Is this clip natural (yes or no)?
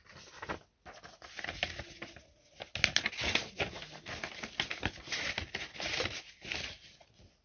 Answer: yes